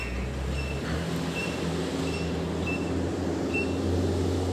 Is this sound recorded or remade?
recorded